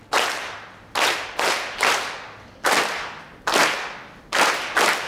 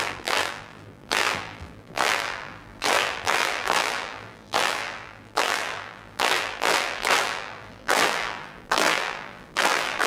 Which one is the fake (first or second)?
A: second